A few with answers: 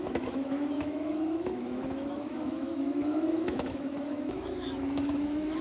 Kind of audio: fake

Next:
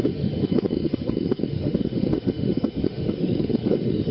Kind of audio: fake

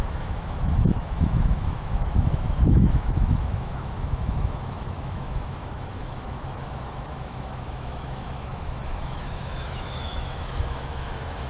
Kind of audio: fake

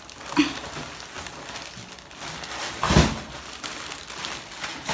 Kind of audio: real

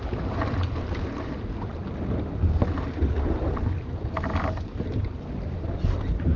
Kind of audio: real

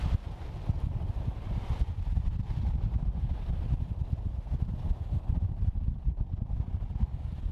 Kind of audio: real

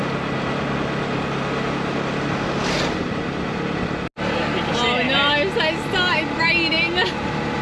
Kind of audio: real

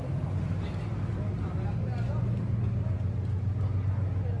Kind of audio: real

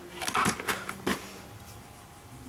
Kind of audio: real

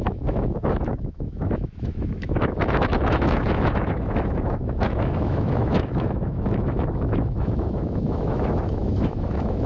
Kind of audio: fake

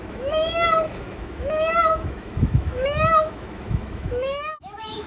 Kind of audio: fake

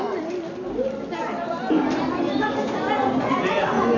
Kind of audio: real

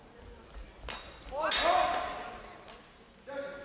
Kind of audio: real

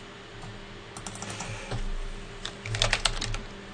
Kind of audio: real